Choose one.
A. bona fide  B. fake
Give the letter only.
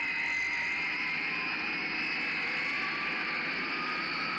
A